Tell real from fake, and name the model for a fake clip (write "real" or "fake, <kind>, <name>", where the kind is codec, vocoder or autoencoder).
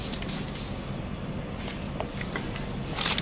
real